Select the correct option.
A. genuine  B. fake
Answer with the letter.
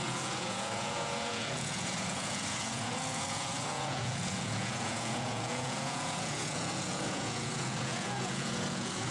B